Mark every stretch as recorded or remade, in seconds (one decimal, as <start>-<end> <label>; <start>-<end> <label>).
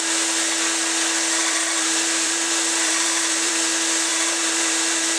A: 0.0-1.4 recorded; 1.4-3.5 remade; 3.5-4.1 recorded; 4.1-5.2 remade